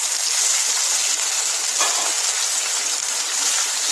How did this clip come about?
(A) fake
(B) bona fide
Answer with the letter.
B